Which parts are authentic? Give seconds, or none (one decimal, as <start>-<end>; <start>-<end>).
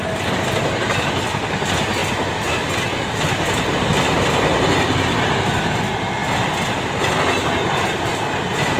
0.0-8.8